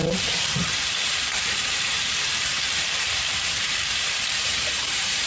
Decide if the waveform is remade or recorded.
remade